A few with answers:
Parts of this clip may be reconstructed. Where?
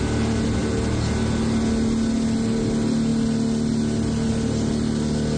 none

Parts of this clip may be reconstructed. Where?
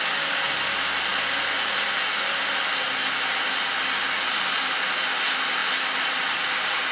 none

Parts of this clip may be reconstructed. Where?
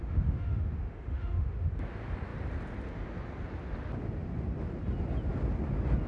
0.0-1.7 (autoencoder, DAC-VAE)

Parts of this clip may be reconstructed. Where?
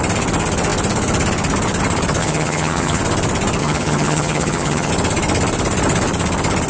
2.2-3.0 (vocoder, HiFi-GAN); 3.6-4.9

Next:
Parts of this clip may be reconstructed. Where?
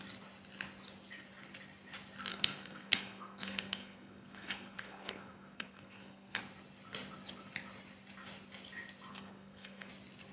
2.3-6.4 (codec, SNAC); 9.1-9.9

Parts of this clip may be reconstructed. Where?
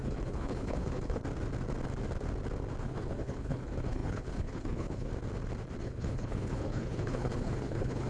0.0-1.2 (codec, HILCodec); 2.8-5.1; 5.8-8.1